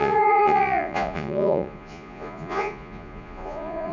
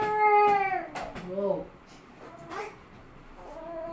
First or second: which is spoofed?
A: first